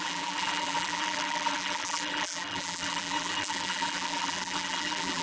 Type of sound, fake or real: fake